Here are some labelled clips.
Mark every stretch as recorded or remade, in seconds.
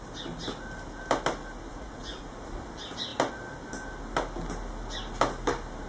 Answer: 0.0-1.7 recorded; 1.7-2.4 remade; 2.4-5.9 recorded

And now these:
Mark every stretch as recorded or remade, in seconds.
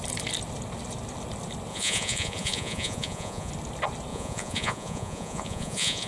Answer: 0.0-1.7 recorded; 1.7-3.5 remade; 3.5-4.1 recorded; 4.1-6.1 remade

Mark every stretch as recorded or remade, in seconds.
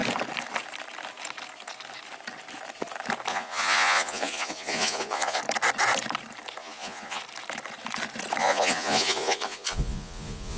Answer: 0.0-3.3 recorded; 3.3-5.4 remade; 5.4-6.6 recorded; 6.6-7.2 remade; 7.2-8.4 recorded; 8.4-10.6 remade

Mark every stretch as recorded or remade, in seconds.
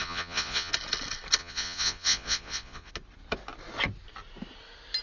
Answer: 0.0-0.7 remade; 0.7-1.4 recorded; 1.4-2.9 remade; 2.9-5.0 recorded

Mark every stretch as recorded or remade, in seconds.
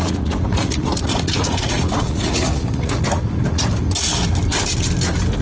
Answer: 0.0-3.7 remade; 3.7-5.4 recorded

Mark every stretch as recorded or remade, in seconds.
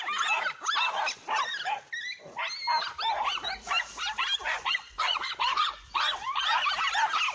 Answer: 0.0-4.4 recorded; 4.4-6.4 remade; 6.4-7.3 recorded